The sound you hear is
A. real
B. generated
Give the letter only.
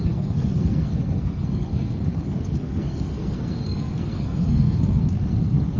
B